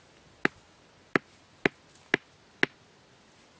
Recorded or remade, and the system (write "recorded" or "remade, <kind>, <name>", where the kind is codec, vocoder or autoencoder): recorded